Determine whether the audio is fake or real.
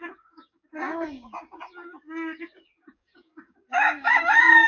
fake